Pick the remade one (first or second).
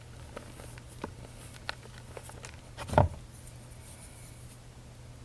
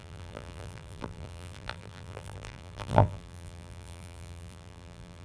second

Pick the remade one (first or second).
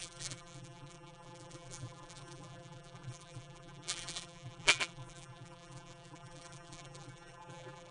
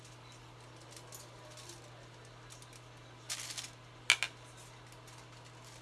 first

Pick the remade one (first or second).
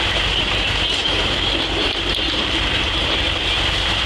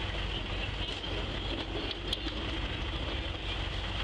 first